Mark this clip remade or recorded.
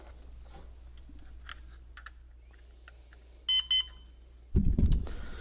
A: recorded